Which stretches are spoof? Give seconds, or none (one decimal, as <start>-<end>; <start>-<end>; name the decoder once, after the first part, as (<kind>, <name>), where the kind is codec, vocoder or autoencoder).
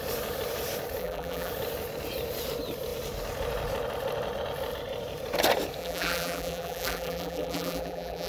1.0-1.5 (vocoder, BigVGAN v2); 5.8-8.3